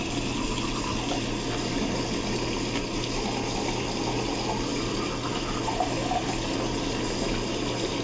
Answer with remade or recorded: recorded